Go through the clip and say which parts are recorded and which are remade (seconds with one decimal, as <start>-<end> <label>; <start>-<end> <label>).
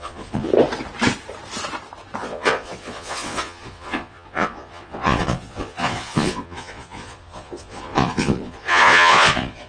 0.0-0.5 remade; 0.5-2.2 recorded; 2.2-9.7 remade